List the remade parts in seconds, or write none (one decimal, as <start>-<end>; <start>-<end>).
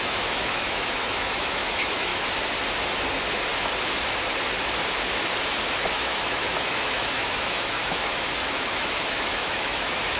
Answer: 0.0-2.1; 5.9-10.2